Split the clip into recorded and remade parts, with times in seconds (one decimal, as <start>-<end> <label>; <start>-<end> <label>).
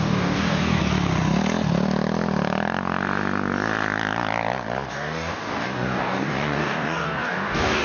0.0-0.8 remade; 0.8-4.9 recorded; 4.9-7.8 remade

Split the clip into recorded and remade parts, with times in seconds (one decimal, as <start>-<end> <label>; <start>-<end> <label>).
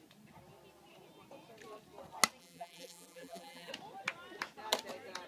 0.0-2.4 recorded; 2.4-3.7 remade; 3.7-5.3 recorded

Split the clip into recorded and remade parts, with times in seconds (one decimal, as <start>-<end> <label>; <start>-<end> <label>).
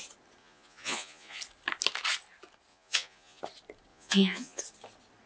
0.0-0.4 recorded; 0.4-1.4 remade; 1.4-2.7 recorded; 2.7-3.4 remade; 3.4-3.9 recorded; 3.9-4.6 remade; 4.6-5.3 recorded